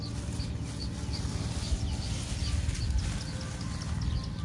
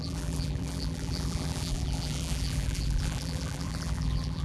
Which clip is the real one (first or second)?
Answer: first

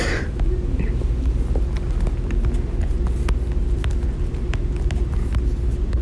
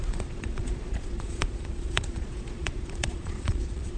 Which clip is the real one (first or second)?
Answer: first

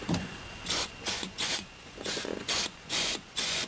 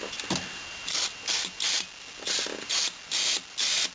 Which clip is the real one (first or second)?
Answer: second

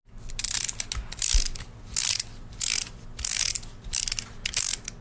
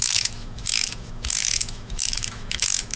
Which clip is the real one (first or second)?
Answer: first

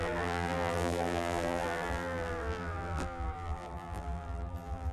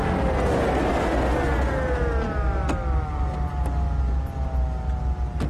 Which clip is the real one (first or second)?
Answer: second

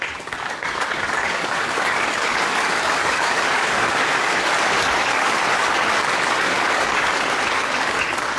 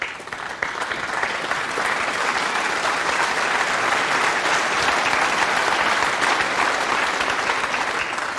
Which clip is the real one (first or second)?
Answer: second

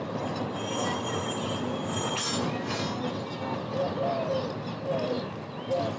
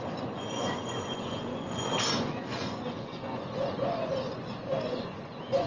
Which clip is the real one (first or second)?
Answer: first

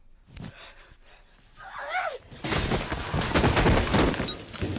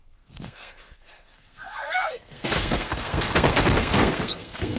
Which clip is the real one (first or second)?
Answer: first